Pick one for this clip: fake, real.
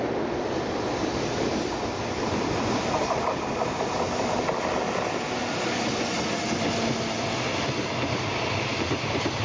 real